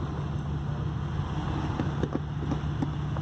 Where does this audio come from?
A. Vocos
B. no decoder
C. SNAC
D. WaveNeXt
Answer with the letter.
B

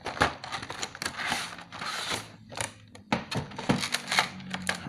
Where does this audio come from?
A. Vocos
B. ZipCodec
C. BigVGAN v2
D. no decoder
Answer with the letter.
D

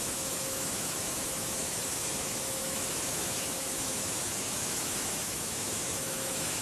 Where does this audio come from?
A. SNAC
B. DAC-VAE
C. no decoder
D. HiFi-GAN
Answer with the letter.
B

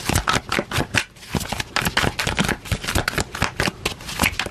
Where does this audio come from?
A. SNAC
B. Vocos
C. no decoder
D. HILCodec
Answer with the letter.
C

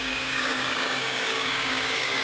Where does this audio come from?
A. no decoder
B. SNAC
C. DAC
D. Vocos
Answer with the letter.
C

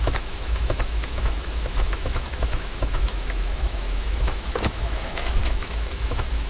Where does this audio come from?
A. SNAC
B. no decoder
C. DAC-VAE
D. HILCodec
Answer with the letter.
C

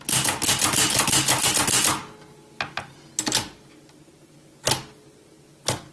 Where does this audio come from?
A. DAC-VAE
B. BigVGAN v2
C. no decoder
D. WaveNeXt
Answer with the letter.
C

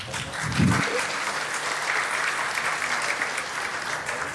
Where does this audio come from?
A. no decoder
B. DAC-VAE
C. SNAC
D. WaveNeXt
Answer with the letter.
A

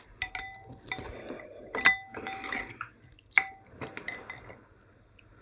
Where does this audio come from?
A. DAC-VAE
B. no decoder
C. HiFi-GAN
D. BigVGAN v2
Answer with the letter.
B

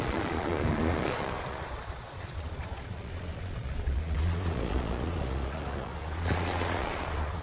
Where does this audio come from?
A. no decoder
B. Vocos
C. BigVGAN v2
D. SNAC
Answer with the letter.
B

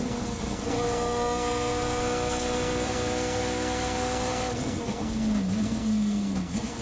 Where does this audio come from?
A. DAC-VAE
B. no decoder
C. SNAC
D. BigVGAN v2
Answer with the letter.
C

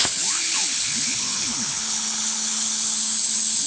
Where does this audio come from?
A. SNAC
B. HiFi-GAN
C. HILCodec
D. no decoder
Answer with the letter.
C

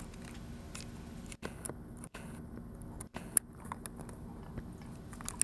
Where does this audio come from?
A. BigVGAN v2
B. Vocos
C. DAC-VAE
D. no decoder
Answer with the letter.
D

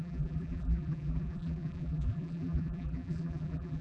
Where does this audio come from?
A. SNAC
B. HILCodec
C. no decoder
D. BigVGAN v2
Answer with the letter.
D